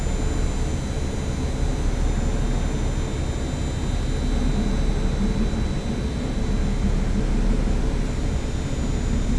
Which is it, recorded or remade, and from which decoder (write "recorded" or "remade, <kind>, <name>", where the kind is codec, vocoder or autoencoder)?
recorded